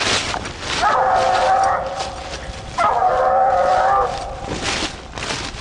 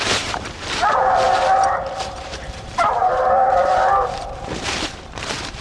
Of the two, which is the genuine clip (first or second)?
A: first